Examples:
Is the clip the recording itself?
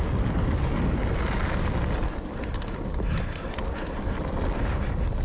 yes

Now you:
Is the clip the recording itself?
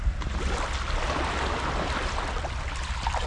yes